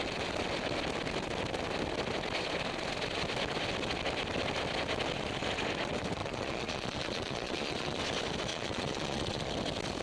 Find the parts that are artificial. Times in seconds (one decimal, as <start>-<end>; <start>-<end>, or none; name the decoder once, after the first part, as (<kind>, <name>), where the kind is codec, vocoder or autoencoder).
6.2-8.0 (vocoder, Vocos); 8.5-9.5